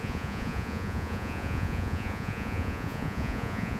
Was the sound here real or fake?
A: fake